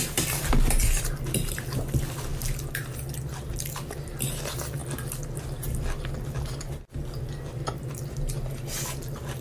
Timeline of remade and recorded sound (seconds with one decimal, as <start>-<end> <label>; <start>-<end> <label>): 0.0-9.4 recorded